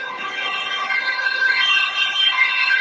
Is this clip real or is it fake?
fake